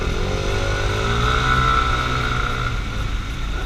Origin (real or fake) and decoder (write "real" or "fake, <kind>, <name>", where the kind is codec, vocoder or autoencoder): real